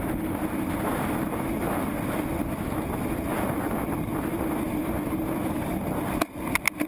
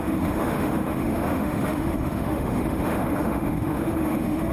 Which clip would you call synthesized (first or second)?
second